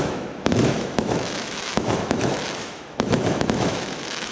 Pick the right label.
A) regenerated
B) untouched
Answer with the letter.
A